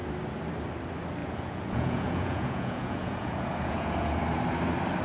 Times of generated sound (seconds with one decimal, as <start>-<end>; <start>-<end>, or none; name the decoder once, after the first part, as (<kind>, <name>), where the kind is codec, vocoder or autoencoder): 1.2-4.2 (vocoder, Vocos)